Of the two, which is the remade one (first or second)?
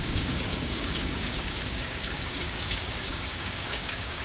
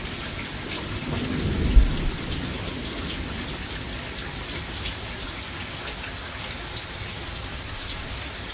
first